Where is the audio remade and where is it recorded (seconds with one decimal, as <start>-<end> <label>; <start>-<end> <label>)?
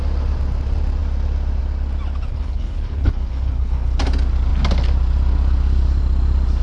0.0-2.3 recorded; 2.3-4.0 remade; 4.0-6.6 recorded